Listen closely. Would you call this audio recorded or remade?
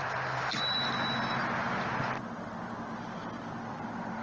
recorded